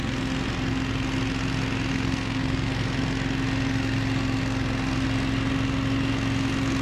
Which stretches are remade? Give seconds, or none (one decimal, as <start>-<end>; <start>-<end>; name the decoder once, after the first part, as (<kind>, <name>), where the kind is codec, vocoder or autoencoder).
1.9-2.7 (codec, SNAC)